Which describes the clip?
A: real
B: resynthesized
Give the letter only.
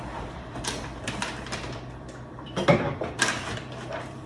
B